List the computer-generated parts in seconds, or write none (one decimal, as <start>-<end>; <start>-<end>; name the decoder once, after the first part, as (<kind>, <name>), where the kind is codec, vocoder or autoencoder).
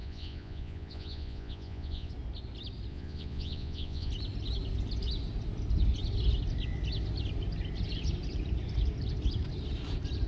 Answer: 0.0-2.1 (vocoder, Vocos); 2.9-4.1